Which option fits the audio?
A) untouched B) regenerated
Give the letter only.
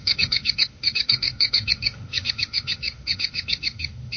B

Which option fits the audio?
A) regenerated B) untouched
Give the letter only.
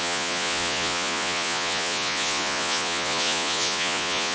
A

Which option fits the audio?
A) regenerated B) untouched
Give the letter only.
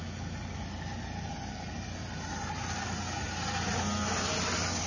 B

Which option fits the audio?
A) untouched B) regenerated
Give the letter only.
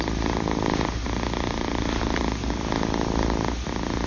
A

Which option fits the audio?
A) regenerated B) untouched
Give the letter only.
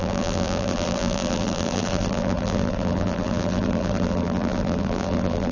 A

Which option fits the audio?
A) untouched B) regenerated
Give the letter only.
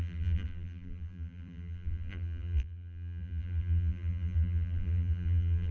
B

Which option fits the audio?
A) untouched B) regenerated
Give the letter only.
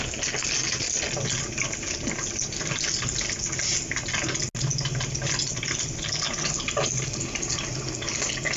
A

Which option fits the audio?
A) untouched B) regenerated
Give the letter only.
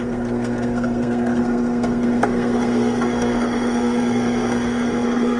B